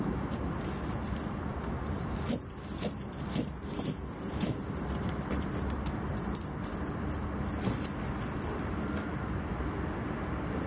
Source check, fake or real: fake